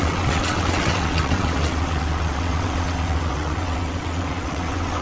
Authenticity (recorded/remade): remade